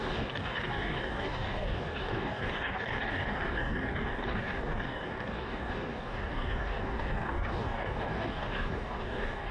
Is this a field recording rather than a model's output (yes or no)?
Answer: no